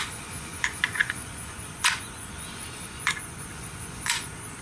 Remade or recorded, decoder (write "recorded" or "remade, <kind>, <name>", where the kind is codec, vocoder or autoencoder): remade, vocoder, Vocos